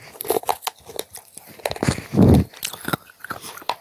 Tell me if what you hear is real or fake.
fake